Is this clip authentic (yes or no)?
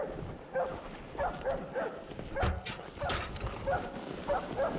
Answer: yes